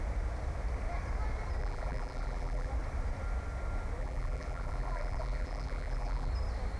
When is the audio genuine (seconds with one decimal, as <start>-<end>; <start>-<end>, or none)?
0.0-1.6; 2.7-4.0; 6.3-6.8

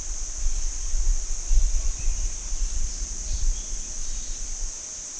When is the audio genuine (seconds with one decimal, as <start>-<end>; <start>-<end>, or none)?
1.1-1.6

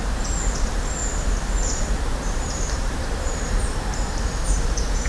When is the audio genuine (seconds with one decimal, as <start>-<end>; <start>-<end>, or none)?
1.0-1.9

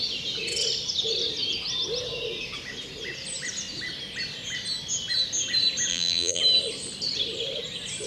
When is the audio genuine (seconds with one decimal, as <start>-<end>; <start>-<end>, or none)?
0.0-5.9; 6.4-8.1

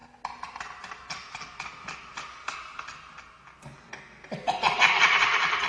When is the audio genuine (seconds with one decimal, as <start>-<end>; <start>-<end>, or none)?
0.0-5.7

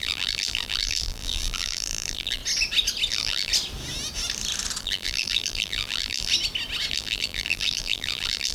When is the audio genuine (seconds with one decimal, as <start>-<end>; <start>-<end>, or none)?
2.4-3.1; 3.5-4.8; 6.3-6.9

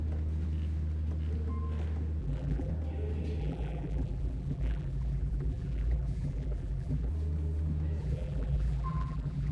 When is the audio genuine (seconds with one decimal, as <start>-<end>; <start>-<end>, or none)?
0.0-2.2; 2.7-3.4; 7.1-8.0

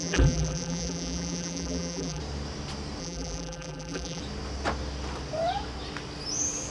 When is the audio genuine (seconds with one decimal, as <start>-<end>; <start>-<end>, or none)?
2.2-3.0; 4.2-6.7